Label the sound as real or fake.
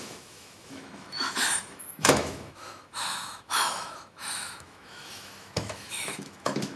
fake